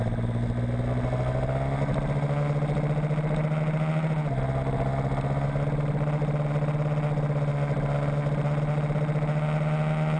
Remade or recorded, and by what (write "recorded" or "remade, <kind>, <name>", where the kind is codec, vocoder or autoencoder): recorded